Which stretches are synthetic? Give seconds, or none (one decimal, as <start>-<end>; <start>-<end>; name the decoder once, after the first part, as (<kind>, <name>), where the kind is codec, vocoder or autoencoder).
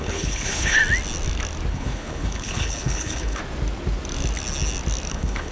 0.0-0.8 (codec, HILCodec); 1.7-3.4; 5.1-5.5